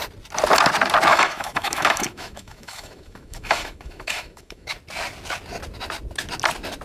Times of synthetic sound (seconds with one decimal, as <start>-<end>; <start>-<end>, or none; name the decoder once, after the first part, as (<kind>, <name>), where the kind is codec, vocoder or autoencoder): 1.1-4.7 (autoencoder, DAC-VAE)